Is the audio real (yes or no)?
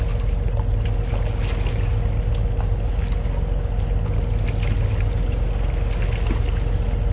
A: yes